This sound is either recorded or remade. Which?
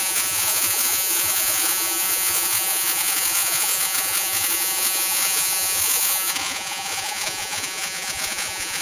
remade